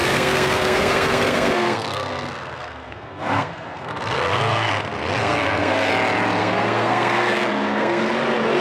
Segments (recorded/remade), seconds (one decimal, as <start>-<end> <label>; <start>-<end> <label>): 0.0-4.7 remade; 4.7-5.2 recorded; 5.2-5.9 remade; 5.9-6.4 recorded; 6.4-8.1 remade; 8.1-8.6 recorded